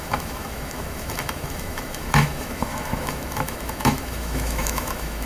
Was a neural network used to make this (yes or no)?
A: yes